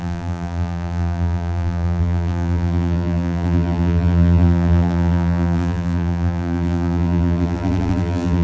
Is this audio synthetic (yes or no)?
yes